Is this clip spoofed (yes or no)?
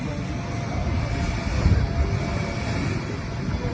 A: no